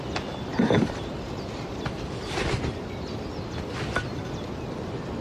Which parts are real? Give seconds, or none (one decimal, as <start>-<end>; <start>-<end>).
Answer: 0.0-0.5; 3.6-5.2